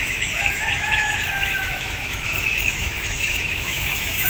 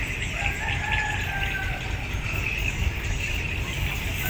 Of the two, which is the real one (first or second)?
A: second